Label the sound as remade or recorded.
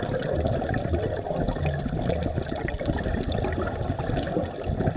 recorded